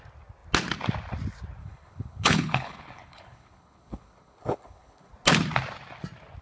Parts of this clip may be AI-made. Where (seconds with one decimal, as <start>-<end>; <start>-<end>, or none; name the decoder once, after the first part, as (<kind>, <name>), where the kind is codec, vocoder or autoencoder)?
1.6-5.1 (codec, HILCodec)